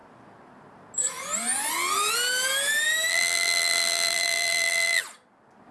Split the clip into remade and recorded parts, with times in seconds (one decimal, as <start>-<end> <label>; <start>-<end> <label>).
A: 0.0-3.1 recorded; 3.1-5.0 remade; 5.0-5.7 recorded